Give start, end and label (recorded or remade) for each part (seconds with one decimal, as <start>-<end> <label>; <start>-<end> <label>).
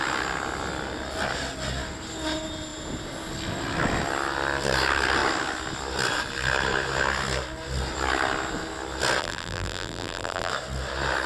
0.0-9.2 recorded; 9.2-10.5 remade; 10.5-11.3 recorded